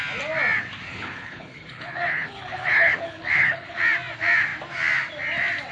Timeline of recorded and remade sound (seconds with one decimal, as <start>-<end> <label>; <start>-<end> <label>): 0.0-0.9 recorded; 0.9-3.8 remade; 3.8-5.7 recorded